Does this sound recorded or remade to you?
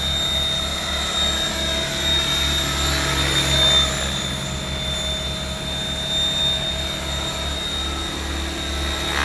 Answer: recorded